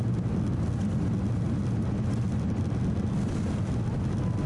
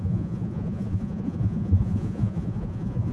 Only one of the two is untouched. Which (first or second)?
first